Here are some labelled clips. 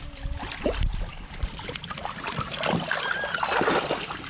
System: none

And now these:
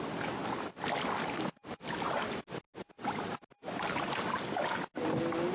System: none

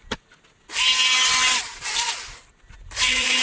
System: none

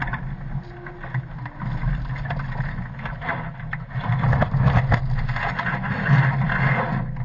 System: none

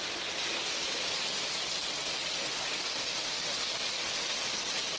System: none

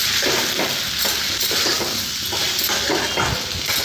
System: none